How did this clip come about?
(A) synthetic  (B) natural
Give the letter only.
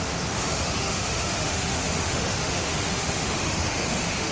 A